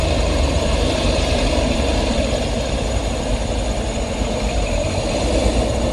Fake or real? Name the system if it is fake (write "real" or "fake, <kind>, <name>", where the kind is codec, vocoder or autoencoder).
fake, vocoder, BigVGAN v2